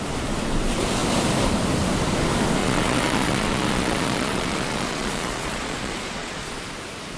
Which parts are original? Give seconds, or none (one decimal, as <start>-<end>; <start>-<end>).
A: 0.0-2.6; 6.5-7.2